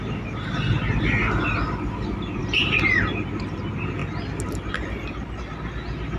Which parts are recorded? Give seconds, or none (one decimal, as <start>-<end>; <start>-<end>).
0.0-6.2